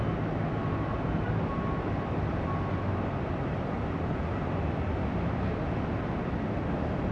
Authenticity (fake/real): real